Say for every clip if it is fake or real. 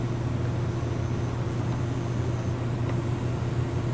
real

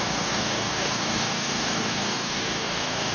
fake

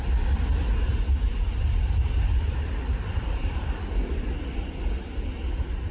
real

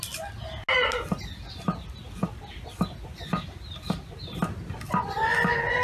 real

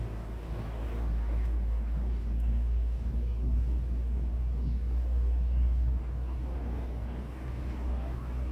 fake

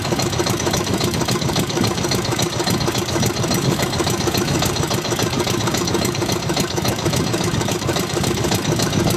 fake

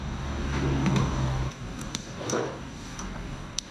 fake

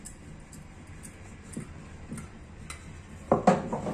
real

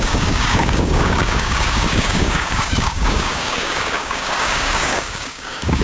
fake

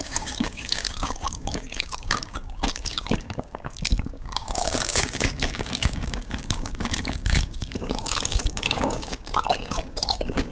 fake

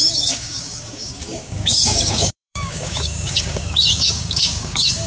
fake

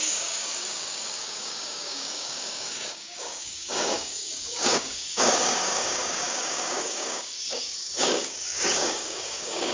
fake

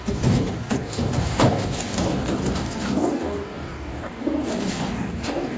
fake